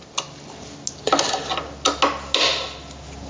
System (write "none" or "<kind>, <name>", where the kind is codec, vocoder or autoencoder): none